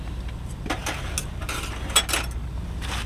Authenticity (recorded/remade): recorded